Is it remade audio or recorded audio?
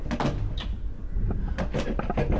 recorded